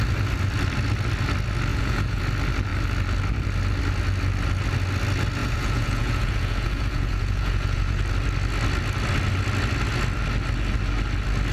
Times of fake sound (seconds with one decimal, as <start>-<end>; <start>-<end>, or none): 1.7-2.2; 5.4-8.0